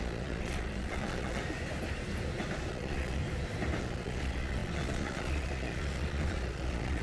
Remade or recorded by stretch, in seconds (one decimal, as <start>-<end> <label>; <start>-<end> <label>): 0.0-1.4 remade; 1.4-2.7 recorded; 2.7-3.2 remade; 3.2-3.8 recorded; 3.8-7.0 remade